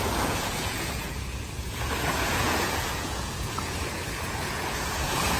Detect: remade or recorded remade